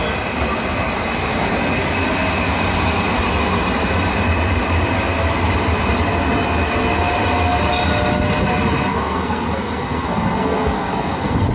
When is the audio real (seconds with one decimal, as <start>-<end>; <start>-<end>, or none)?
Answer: 0.0-8.9